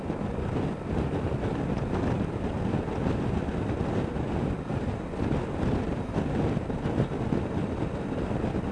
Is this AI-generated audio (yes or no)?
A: no